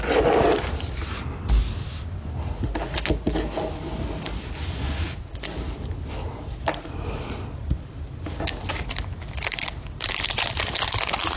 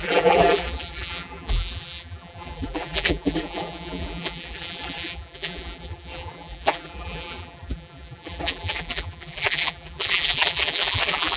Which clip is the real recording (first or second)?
first